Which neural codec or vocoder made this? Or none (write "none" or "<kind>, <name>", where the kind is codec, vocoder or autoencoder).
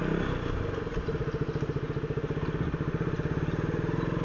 none